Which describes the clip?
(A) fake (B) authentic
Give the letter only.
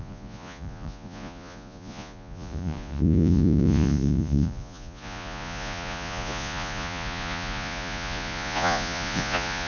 A